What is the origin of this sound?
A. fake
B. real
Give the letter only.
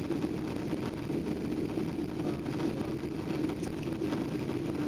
B